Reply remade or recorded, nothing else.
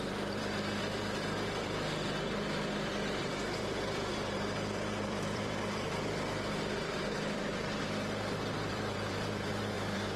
remade